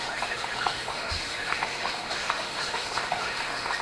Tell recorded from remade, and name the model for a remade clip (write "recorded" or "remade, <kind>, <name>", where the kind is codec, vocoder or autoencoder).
remade, autoencoder, DAC-VAE